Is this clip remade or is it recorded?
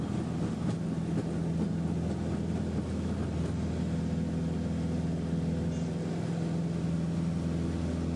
recorded